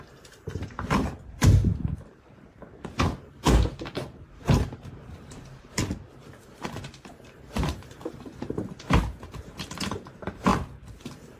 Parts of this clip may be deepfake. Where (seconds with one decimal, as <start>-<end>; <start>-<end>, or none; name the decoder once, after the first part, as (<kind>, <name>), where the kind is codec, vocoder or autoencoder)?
0.0-2.6 (vocoder, BigVGAN v2); 3.2-5.8; 6.4-10.5; 11.0-11.4